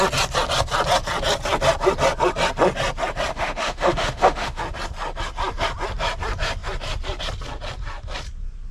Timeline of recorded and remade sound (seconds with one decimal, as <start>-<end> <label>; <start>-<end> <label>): 0.0-3.3 recorded; 3.3-4.6 remade; 4.6-8.7 recorded